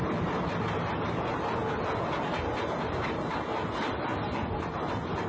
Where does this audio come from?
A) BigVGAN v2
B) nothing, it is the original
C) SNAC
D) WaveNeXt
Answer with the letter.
B